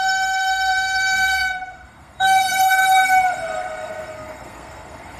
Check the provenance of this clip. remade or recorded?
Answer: remade